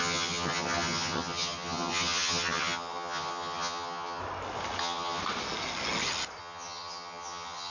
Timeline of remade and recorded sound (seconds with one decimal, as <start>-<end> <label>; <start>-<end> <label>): 0.0-4.2 remade; 4.2-4.8 recorded; 4.8-5.2 remade; 5.2-6.4 recorded; 6.4-7.7 remade